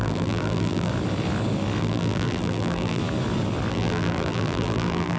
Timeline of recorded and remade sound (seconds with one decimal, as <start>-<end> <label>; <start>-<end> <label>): 0.0-0.9 remade; 0.9-1.8 recorded; 1.8-3.0 remade; 3.0-3.7 recorded; 3.7-5.2 remade